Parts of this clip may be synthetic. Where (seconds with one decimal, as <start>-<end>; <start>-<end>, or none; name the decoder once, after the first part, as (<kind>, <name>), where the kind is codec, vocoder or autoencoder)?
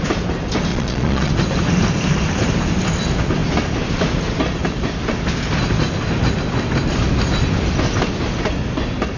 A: 0.7-1.3 (vocoder, Vocos)